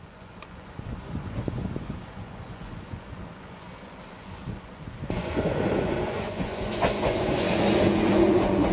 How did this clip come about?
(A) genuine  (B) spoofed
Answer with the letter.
B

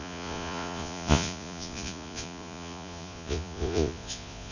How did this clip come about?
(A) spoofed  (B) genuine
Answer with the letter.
A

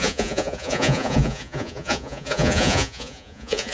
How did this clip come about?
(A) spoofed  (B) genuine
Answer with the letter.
A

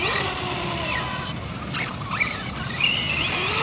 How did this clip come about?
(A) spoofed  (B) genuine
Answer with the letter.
B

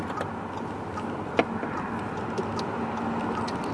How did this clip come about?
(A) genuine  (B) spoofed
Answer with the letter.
A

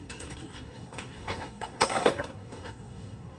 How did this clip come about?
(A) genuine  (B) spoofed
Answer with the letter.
B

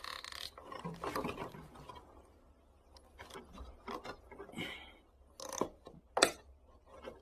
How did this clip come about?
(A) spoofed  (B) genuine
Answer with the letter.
B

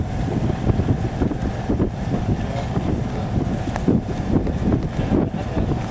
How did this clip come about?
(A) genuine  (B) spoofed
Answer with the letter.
A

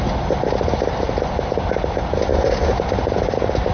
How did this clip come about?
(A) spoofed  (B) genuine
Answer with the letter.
B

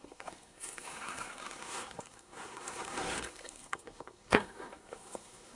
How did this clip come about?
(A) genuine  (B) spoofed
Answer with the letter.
B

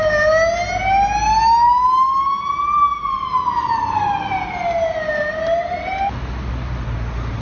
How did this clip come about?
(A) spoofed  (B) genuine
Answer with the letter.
B